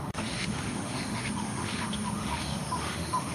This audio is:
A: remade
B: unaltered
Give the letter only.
A